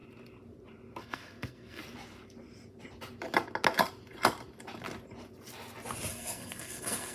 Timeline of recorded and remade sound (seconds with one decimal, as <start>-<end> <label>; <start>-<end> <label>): 0.0-1.0 recorded; 1.0-1.8 remade; 1.8-6.1 recorded; 6.1-7.1 remade